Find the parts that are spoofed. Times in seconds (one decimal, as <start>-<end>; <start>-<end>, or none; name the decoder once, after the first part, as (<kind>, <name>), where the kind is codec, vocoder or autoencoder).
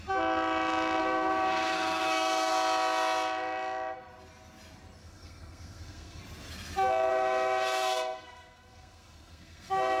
1.0-2.5 (codec, SNAC); 5.0-6.2; 7.1-10.0